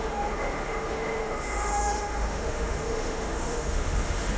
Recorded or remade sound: remade